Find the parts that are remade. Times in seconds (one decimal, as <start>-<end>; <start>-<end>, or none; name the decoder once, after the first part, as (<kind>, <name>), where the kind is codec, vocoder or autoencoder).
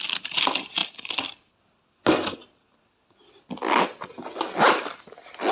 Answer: none